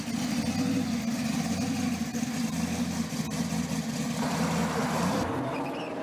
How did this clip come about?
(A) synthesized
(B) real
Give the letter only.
B